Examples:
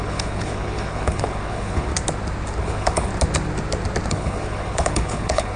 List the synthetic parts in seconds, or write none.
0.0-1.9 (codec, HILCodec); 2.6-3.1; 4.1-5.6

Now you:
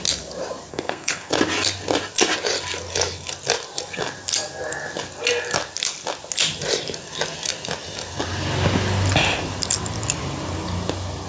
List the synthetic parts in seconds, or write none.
0.7-1.3 (codec, SNAC)